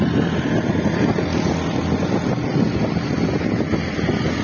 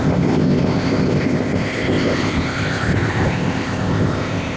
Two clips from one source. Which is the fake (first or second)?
second